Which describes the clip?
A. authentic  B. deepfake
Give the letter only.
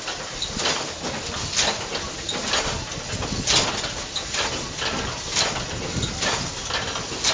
A